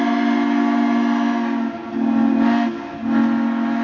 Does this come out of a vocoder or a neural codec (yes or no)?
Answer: no